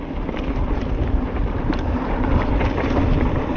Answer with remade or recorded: recorded